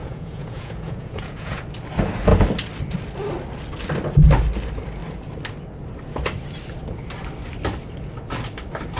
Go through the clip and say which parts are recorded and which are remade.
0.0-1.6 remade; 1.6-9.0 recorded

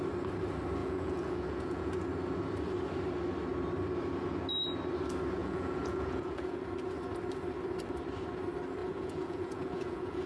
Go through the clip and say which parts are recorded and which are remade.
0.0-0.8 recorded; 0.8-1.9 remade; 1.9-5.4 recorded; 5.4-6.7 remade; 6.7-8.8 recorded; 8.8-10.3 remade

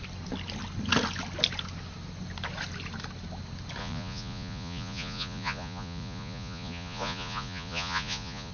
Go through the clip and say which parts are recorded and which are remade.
0.0-3.8 recorded; 3.8-8.5 remade